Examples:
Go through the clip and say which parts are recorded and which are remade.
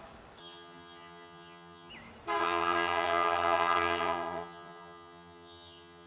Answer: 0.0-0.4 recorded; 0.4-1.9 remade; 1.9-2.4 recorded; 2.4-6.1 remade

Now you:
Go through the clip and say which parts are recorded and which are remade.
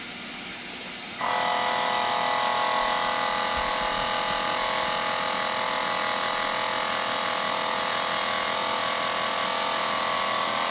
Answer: 0.0-10.7 recorded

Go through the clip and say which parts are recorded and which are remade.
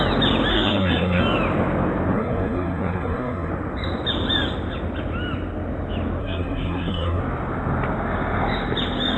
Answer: 0.0-0.5 recorded; 0.5-1.2 remade; 1.2-2.1 recorded; 2.1-3.5 remade; 3.5-6.2 recorded; 6.2-7.2 remade; 7.2-9.2 recorded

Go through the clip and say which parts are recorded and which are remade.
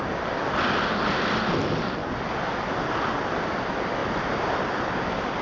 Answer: 0.0-5.4 recorded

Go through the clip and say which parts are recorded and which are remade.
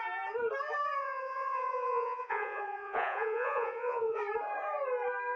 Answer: 0.0-1.0 recorded; 1.0-4.2 remade; 4.2-5.4 recorded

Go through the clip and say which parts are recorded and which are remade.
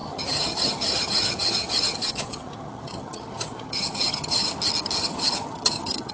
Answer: 0.0-4.5 remade; 4.5-5.0 recorded; 5.0-6.1 remade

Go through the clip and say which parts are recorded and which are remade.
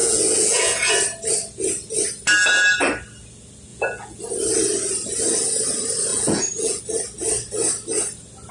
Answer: 0.0-0.9 remade; 0.9-3.7 recorded; 3.7-4.2 remade; 4.2-6.1 recorded; 6.1-6.8 remade; 6.8-8.5 recorded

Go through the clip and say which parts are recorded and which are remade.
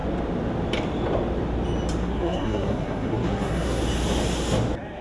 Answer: 0.0-2.0 recorded; 2.0-3.8 remade; 3.8-5.0 recorded